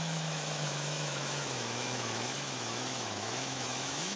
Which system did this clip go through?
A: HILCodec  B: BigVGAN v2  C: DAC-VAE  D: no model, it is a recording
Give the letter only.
C